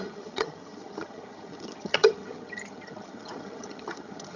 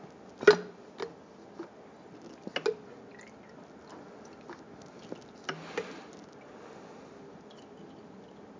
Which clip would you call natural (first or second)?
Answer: second